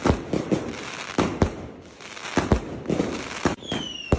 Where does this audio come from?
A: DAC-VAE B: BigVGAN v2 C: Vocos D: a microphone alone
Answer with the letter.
D